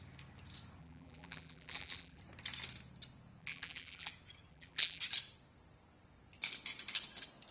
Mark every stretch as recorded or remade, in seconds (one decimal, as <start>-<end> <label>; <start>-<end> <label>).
0.0-0.8 recorded; 0.8-2.2 remade; 2.2-3.4 recorded; 3.4-4.1 remade; 4.1-4.5 recorded; 4.5-5.0 remade; 5.0-7.5 recorded